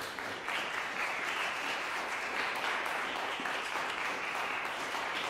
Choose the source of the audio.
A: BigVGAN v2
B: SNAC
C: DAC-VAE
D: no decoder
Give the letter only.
A